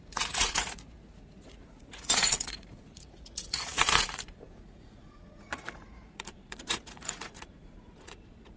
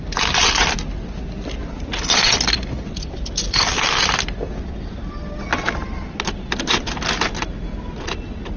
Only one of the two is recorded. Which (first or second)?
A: second